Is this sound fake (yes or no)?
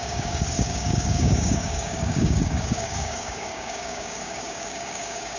yes